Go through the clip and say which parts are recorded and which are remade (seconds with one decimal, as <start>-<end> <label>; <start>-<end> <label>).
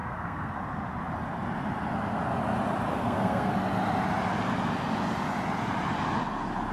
0.0-0.6 remade; 0.6-2.9 recorded; 2.9-3.5 remade; 3.5-6.7 recorded